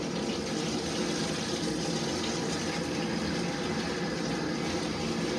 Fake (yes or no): no